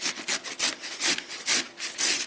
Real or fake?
real